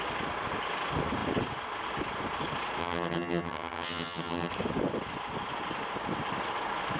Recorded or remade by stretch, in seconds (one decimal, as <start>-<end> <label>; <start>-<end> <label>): 0.0-2.8 recorded; 2.8-4.5 remade; 4.5-7.0 recorded